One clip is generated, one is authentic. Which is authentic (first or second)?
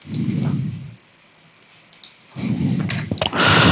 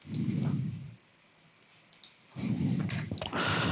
first